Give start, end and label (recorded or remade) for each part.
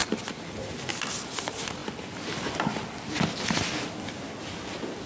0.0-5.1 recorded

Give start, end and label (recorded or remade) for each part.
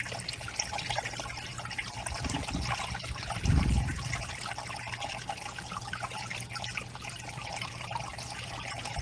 0.0-9.0 recorded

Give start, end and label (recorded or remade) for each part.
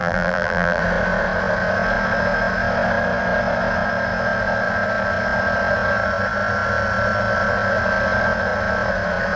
0.0-0.8 remade; 0.8-9.4 recorded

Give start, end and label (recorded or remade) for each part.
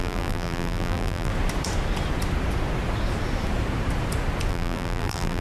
0.0-1.3 remade; 1.3-4.5 recorded; 4.5-5.4 remade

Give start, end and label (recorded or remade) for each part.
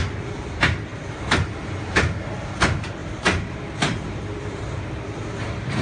0.0-3.0 recorded; 3.0-5.8 remade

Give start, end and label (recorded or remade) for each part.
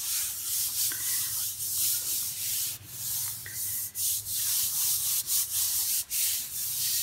0.0-0.5 recorded; 0.5-2.7 remade; 2.7-3.4 recorded; 3.4-5.6 remade; 5.6-7.0 recorded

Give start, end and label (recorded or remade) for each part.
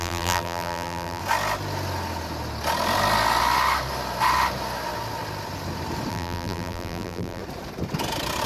0.0-1.2 remade; 1.2-6.1 recorded; 6.1-7.4 remade; 7.4-8.5 recorded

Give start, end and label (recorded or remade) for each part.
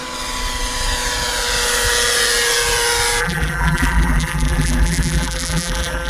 0.0-3.2 recorded; 3.2-6.1 remade